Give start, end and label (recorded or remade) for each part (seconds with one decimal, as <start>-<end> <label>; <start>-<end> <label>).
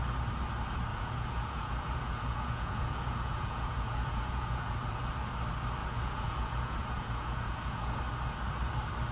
0.0-0.9 recorded; 0.9-5.0 remade; 5.0-5.8 recorded; 5.8-8.0 remade; 8.0-9.1 recorded